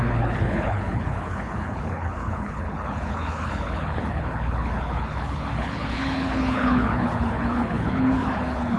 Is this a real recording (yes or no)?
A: no